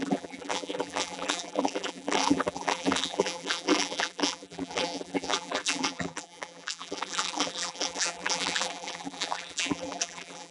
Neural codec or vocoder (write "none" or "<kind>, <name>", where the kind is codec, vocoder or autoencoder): vocoder, BigVGAN v2